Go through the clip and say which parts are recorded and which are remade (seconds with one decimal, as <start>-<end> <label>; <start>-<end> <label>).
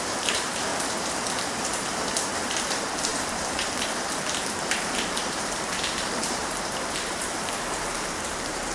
0.0-0.7 remade; 0.7-1.4 recorded; 1.4-8.7 remade